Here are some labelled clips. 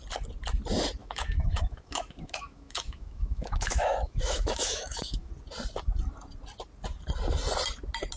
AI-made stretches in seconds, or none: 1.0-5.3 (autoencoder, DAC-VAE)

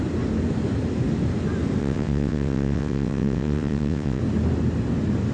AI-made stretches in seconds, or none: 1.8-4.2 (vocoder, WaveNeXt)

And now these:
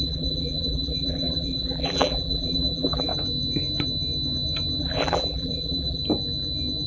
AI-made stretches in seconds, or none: 0.0-3.1 (vocoder, BigVGAN v2); 4.8-6.0